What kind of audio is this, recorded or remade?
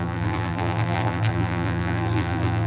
remade